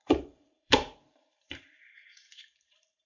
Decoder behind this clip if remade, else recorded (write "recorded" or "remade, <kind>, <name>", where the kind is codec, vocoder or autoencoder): remade, vocoder, BigVGAN v2